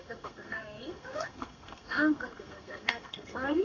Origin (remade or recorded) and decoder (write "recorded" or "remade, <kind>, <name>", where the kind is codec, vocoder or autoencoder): remade, codec, SNAC